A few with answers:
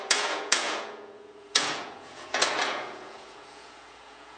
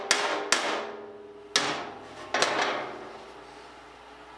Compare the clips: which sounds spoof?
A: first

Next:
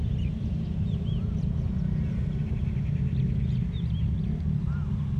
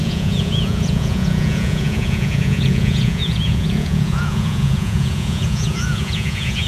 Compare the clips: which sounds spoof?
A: second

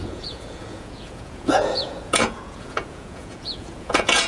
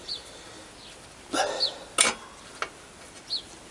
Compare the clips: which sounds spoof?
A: first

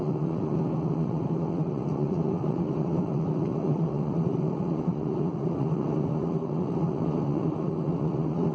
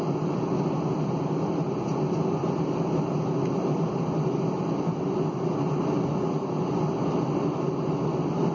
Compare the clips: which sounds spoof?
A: first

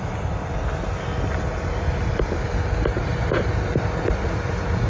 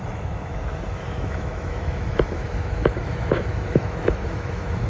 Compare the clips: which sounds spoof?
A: second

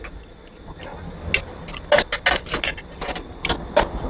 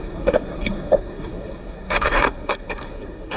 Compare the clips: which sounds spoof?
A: second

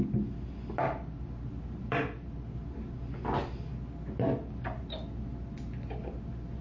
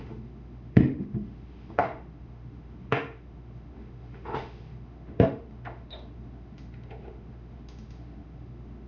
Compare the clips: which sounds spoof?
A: second